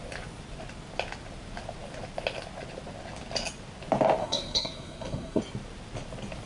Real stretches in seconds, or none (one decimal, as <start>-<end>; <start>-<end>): 0.0-4.2; 5.4-6.5